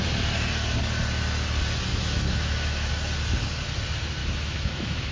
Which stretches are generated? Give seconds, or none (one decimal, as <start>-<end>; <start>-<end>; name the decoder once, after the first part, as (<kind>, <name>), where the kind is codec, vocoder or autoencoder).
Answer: 1.9-2.9 (autoencoder, DAC-VAE); 4.2-5.1